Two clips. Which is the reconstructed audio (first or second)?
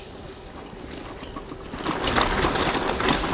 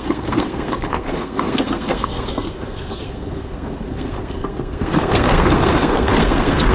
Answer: second